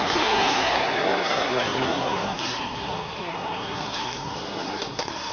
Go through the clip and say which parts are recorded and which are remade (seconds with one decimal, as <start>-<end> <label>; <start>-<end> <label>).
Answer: 0.0-5.3 remade